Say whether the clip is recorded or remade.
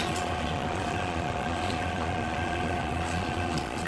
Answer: remade